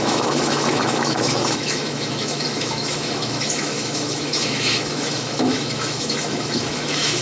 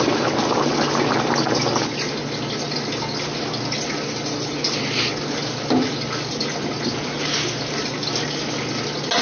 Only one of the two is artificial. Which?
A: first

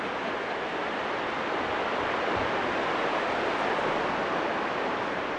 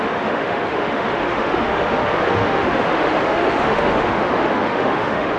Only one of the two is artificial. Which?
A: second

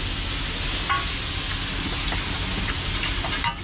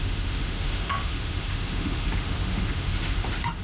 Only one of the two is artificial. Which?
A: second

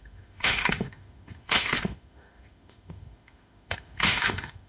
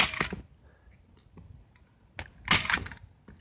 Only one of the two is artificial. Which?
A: first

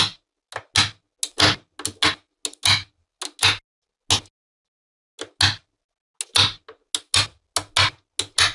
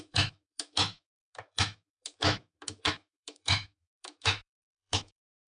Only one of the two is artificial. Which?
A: second